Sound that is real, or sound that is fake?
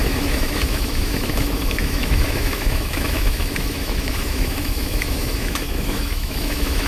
fake